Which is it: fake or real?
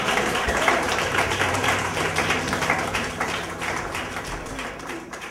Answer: fake